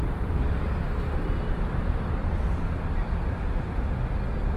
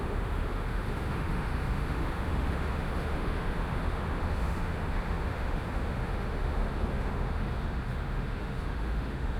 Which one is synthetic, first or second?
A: second